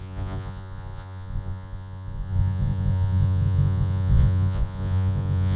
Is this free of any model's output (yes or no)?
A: no